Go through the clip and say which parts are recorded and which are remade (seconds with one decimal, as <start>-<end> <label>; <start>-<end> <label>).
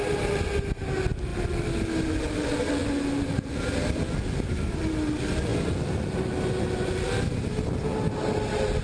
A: 0.0-8.8 recorded